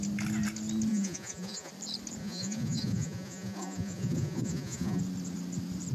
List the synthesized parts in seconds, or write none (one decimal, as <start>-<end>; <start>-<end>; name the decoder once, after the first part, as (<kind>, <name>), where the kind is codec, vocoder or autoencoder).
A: 0.9-1.7 (vocoder, Vocos); 2.2-5.0